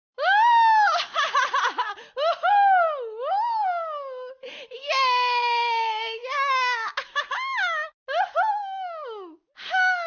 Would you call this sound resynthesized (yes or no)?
no